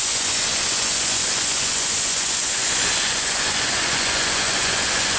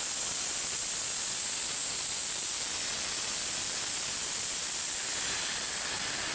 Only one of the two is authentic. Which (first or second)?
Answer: second